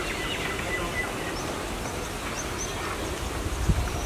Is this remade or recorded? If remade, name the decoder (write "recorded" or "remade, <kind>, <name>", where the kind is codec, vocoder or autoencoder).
recorded